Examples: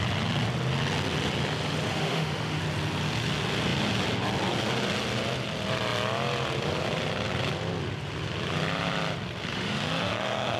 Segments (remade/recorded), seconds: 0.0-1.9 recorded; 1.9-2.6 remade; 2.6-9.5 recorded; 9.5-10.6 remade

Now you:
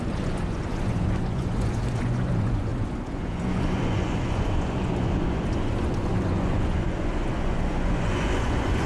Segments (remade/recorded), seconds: 0.0-8.9 remade

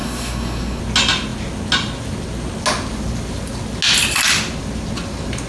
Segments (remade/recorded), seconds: 0.0-0.8 remade; 0.8-5.5 recorded

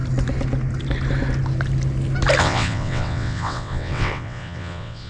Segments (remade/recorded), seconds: 0.0-2.4 recorded; 2.4-5.1 remade